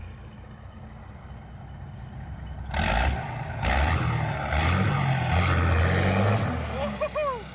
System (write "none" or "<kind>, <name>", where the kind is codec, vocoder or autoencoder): none